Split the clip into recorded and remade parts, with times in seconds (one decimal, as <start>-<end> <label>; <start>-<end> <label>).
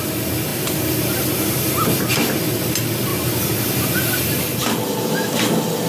0.0-5.9 recorded